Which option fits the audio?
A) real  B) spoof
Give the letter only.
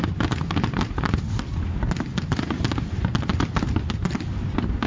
A